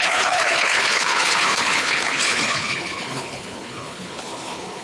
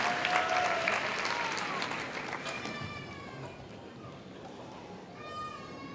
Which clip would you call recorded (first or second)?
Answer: second